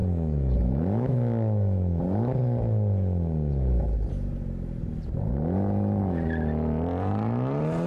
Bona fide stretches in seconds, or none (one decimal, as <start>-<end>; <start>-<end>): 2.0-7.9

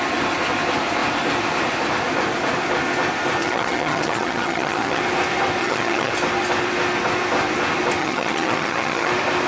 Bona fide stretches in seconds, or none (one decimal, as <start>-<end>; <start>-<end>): 0.0-3.4; 5.0-5.6; 6.1-8.0; 9.1-9.5

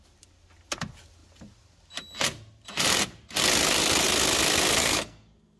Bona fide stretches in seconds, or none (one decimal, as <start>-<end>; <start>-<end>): 0.0-4.8

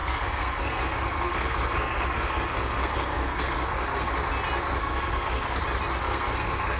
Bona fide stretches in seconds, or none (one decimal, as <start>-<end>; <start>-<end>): 4.1-4.8; 5.6-6.0

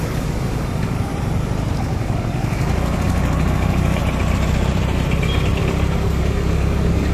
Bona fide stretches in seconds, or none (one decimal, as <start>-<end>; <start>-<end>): 1.1-1.8; 4.0-5.6

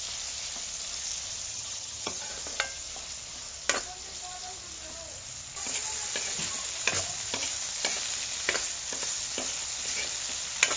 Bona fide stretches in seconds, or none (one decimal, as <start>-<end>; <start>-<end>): 0.0-1.5; 2.3-10.8

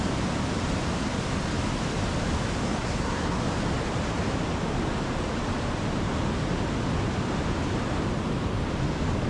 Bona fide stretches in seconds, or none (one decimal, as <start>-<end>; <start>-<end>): 0.0-2.6; 3.4-9.3